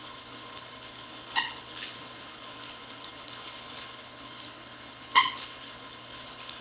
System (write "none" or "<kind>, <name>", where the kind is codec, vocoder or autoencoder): codec, HILCodec